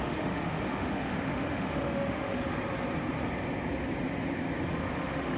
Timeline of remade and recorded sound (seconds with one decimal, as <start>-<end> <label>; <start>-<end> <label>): 0.0-2.4 remade; 2.4-4.8 recorded; 4.8-5.4 remade